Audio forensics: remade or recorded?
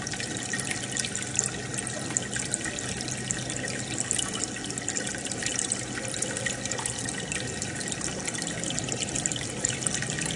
recorded